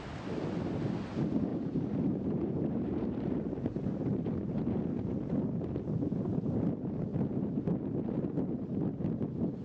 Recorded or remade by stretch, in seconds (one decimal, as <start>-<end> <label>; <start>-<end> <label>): 0.0-1.5 recorded; 1.5-4.6 remade; 4.6-7.1 recorded; 7.1-7.6 remade; 7.6-9.6 recorded